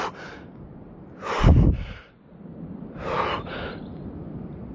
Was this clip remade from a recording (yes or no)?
no